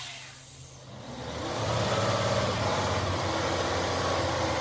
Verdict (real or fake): real